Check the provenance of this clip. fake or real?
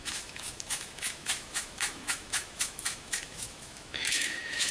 fake